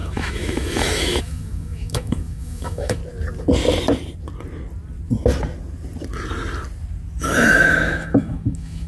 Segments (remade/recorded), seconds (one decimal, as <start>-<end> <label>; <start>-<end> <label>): 0.0-3.0 remade; 3.0-7.2 recorded; 7.2-8.9 remade